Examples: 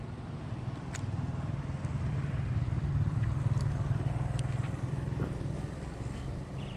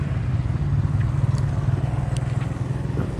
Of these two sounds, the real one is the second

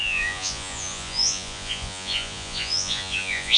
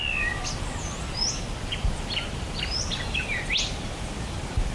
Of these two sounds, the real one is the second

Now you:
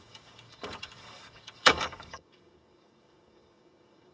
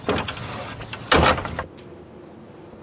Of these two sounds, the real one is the second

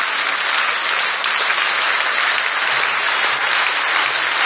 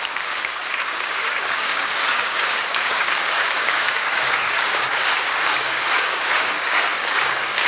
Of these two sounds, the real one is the first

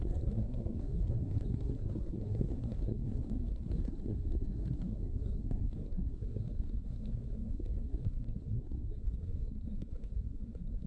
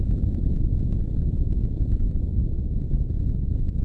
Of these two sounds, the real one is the second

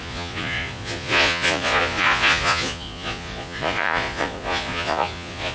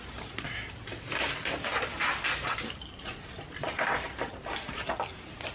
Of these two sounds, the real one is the second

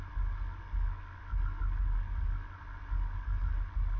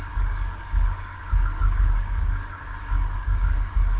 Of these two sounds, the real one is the first